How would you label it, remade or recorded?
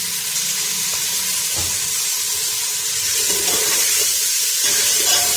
recorded